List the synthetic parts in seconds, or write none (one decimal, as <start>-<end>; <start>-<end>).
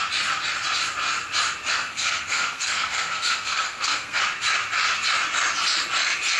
1.7-4.2